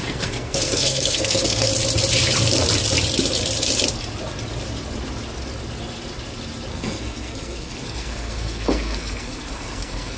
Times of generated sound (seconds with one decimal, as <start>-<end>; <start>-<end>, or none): 0.0-1.7; 6.7-10.2